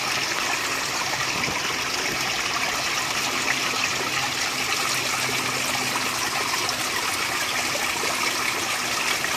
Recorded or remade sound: recorded